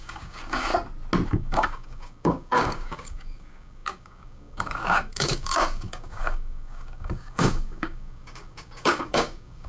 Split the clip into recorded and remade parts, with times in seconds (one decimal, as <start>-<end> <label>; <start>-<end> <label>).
0.0-0.7 remade; 0.7-1.3 recorded; 1.3-9.7 remade